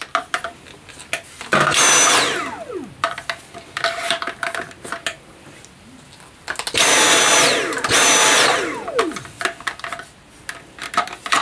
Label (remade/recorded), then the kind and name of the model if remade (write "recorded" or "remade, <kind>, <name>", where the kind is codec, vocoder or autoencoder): recorded